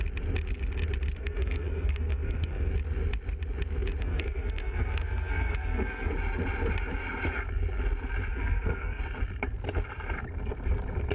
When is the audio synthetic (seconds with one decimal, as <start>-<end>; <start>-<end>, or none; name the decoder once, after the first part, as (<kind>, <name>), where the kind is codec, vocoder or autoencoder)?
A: 1.2-2.7 (codec, SNAC); 4.0-6.1; 8.3-9.0